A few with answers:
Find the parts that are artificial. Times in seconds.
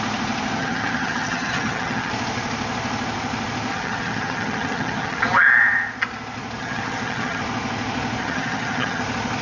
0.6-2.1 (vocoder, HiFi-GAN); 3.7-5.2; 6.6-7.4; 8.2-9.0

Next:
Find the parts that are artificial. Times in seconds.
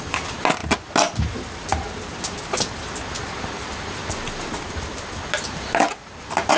none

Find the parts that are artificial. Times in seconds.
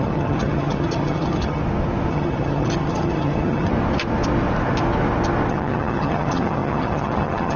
0.0-1.6 (vocoder, HiFi-GAN); 2.1-3.7; 5.5-7.6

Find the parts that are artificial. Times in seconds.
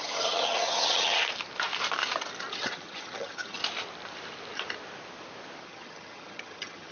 0.0-1.2 (vocoder, HiFi-GAN); 2.5-3.6; 5.6-6.9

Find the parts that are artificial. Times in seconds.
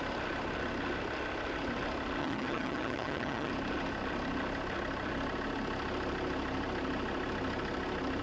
2.2-3.5 (vocoder, HiFi-GAN)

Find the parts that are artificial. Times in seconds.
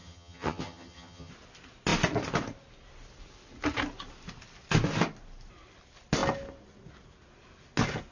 0.0-1.3 (vocoder, HiFi-GAN)